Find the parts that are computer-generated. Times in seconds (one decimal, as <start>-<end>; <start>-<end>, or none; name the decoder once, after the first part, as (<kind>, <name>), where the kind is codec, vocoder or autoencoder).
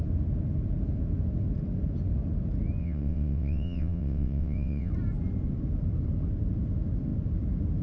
2.8-4.9 (vocoder, WaveNeXt)